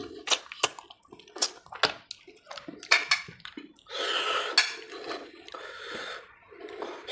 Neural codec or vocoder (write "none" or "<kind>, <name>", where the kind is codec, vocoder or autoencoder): none